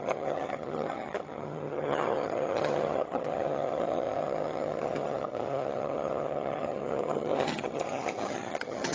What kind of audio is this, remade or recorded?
remade